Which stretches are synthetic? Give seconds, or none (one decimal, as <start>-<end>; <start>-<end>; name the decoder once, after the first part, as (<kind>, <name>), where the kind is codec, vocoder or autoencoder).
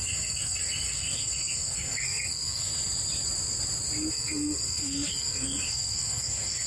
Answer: 0.0-2.7 (codec, SNAC); 4.1-6.7